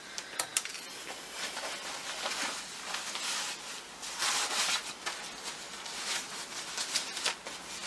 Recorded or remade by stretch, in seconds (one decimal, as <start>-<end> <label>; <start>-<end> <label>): 0.0-7.9 recorded